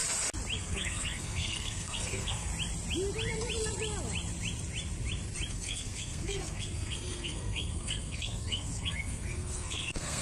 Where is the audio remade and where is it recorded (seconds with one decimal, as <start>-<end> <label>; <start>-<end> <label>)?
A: 0.0-0.6 recorded; 0.6-2.5 remade; 2.5-5.5 recorded; 5.5-10.2 remade